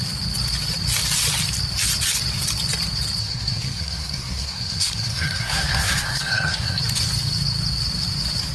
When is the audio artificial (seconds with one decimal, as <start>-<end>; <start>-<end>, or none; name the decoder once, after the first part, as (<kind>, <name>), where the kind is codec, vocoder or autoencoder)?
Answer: 3.2-6.8 (codec, SNAC)